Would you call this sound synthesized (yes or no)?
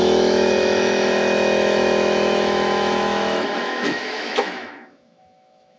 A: yes